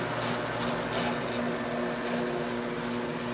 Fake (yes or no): no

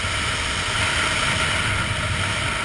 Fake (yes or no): no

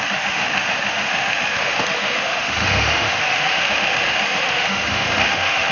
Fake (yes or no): yes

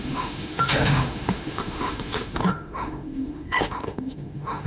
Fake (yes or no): yes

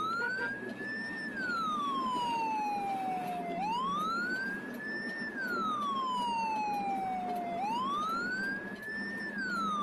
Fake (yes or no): no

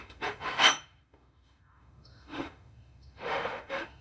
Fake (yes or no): yes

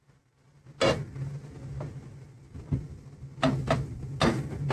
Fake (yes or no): no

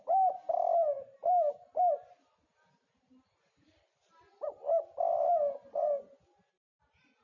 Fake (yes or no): no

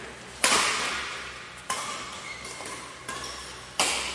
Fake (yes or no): no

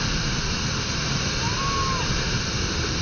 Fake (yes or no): no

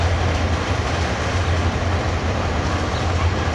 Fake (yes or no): no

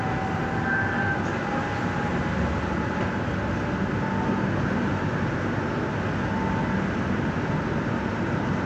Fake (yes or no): no